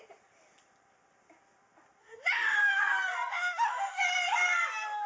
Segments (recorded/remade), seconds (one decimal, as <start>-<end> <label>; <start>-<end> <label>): 0.0-2.0 recorded; 2.0-2.8 remade; 2.8-3.3 recorded; 3.3-4.0 remade; 4.0-5.1 recorded